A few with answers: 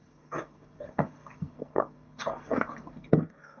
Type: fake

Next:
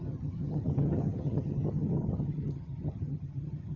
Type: fake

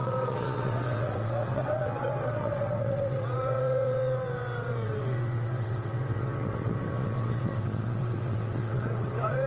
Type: fake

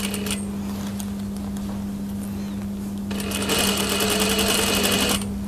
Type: real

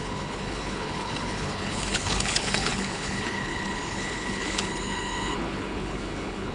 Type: fake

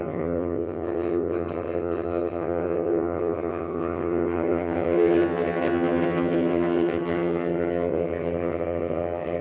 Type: fake